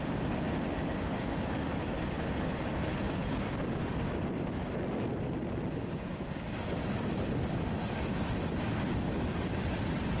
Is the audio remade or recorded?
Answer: recorded